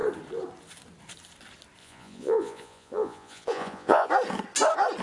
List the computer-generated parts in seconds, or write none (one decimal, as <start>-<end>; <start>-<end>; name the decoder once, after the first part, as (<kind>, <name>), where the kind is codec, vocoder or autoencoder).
1.8-4.1 (vocoder, Vocos)